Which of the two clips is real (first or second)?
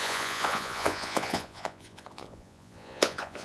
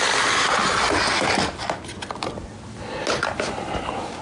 second